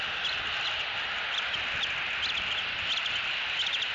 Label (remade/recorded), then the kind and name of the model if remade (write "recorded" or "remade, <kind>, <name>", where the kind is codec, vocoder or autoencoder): recorded